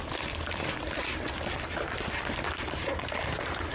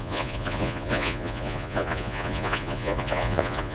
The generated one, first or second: second